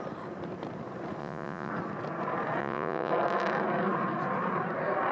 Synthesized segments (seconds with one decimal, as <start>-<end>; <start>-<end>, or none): 1.2-1.7; 2.6-3.1